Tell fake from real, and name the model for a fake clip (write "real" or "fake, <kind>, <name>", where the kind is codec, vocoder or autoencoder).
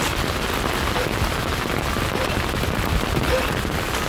real